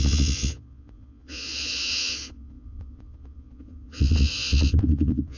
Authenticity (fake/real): fake